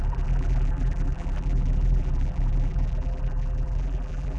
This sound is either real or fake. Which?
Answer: fake